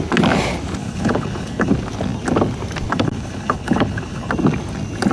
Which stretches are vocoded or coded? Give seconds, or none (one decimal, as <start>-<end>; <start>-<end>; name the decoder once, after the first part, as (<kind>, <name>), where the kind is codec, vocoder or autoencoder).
0.8-1.7 (codec, HILCodec); 2.9-4.3